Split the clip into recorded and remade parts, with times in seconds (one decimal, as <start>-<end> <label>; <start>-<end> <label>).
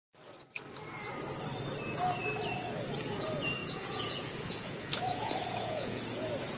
0.0-3.6 recorded; 3.6-6.0 remade; 6.0-6.6 recorded